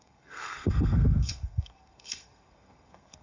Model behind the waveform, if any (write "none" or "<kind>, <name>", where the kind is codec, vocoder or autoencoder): codec, SNAC